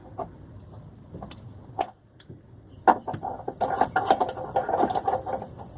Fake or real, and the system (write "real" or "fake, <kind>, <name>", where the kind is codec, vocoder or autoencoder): real